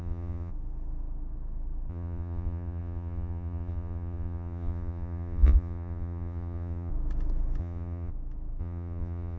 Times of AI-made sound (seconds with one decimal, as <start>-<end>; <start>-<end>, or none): 0.0-0.5; 1.9-6.9; 7.6-8.1; 8.6-9.4